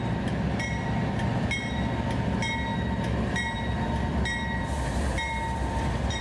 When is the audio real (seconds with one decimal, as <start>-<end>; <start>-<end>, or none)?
0.0-6.2